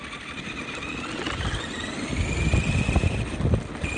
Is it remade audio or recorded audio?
recorded